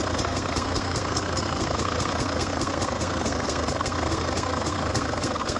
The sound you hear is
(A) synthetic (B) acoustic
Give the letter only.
A